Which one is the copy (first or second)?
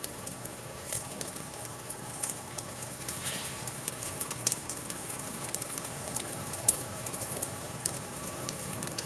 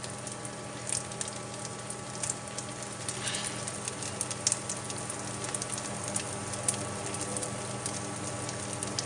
first